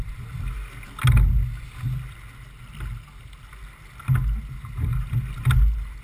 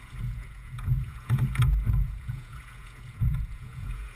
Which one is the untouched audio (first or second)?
first